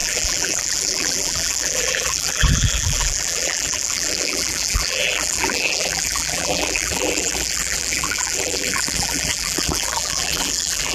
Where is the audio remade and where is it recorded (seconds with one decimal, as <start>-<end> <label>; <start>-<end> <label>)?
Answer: 0.0-10.9 remade